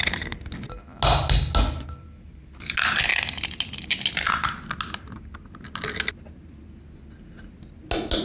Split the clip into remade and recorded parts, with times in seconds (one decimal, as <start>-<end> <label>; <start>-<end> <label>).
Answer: 0.0-8.2 recorded